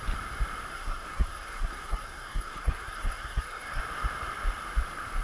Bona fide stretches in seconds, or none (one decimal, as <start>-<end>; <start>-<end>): 0.0-0.7; 3.8-5.2